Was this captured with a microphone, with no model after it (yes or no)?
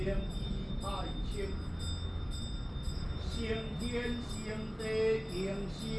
yes